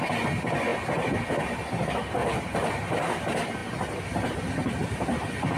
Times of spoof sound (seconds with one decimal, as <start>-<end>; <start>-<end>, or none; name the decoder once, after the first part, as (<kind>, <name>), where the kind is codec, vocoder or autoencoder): none